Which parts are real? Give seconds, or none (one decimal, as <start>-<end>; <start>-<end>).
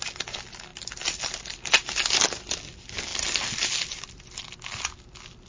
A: 0.0-5.5